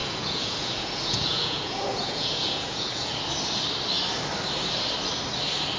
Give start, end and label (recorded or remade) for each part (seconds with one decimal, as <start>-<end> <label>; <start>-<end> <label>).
0.0-3.1 remade; 3.1-5.8 recorded